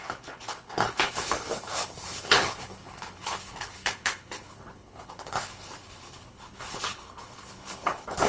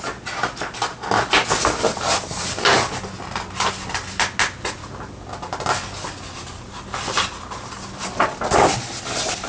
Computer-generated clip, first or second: first